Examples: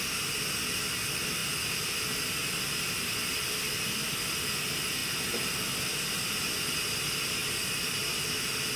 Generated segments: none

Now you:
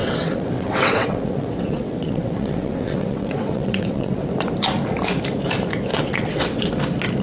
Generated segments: 0.0-4.3 (vocoder, WaveNeXt); 5.9-6.7